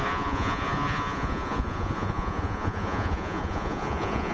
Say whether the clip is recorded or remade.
remade